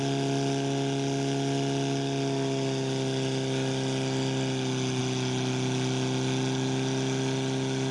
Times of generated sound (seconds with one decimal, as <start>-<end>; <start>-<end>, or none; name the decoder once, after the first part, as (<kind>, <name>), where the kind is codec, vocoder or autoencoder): none